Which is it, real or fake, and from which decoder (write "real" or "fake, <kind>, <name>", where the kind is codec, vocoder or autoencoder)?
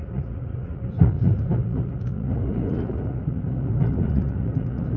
fake, vocoder, Vocos